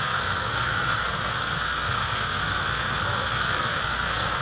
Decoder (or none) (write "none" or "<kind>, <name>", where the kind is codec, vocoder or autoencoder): codec, SNAC